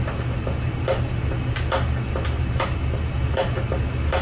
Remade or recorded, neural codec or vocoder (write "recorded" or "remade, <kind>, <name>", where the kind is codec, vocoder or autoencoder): recorded